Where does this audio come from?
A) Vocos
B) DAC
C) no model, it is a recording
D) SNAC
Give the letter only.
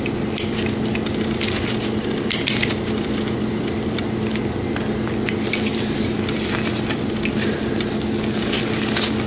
C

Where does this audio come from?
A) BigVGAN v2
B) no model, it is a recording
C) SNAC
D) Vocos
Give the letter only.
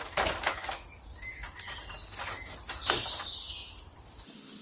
B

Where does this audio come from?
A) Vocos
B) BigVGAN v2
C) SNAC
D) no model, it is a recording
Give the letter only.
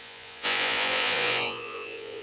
A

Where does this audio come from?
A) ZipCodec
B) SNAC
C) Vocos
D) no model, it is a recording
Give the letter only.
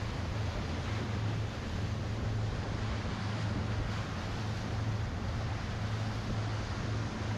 D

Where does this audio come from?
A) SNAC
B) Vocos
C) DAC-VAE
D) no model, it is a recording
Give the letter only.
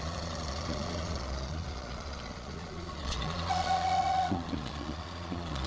B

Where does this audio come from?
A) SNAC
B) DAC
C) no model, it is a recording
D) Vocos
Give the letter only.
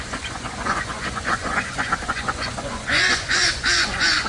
D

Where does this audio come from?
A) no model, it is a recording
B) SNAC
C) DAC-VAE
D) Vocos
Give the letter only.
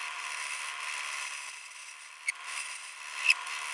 A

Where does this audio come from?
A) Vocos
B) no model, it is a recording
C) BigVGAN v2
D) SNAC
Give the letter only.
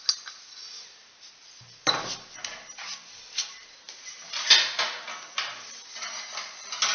B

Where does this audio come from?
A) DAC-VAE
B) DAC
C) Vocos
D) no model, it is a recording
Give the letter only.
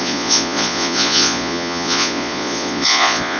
C